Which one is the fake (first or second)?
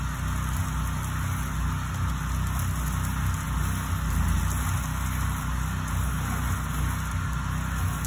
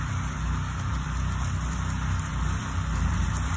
second